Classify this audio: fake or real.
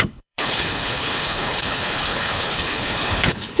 fake